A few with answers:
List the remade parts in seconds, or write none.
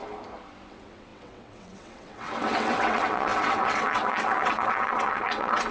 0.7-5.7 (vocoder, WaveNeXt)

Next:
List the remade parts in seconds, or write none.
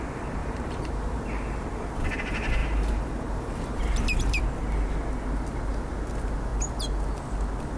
0.4-1.2 (vocoder, BigVGAN v2); 2.6-4.4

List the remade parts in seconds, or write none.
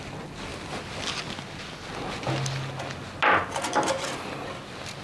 none